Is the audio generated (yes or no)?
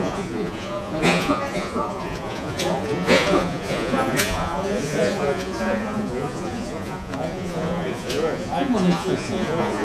yes